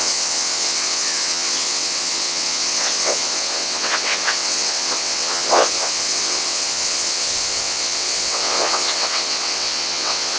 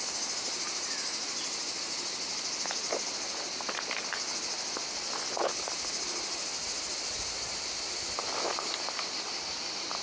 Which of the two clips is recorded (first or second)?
second